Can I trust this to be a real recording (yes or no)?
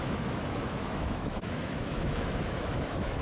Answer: no